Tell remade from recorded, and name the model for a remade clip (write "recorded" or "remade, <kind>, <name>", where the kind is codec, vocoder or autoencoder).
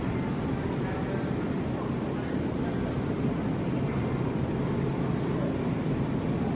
recorded